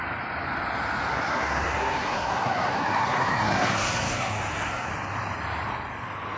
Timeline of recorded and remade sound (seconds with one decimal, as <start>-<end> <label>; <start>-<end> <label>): 0.0-1.1 recorded; 1.1-4.9 remade; 4.9-6.4 recorded